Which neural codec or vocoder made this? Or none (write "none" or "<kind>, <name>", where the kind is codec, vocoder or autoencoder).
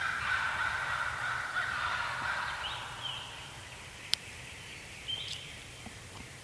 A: vocoder, BigVGAN v2